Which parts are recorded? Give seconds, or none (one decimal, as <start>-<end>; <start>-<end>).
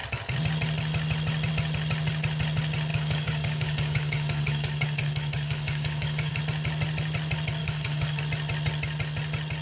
0.0-2.9; 6.4-7.6; 8.2-9.6